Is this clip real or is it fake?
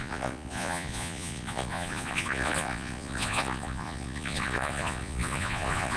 fake